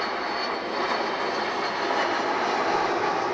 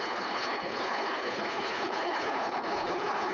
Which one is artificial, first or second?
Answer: second